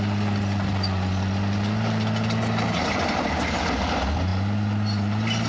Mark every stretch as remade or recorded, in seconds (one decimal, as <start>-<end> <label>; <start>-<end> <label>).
0.0-5.5 recorded